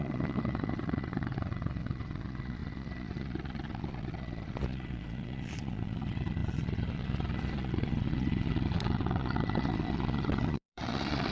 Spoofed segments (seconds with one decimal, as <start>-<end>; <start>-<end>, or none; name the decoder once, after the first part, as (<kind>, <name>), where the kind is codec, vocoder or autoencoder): 0.0-11.3 (vocoder, Vocos)